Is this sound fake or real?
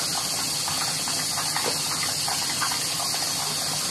real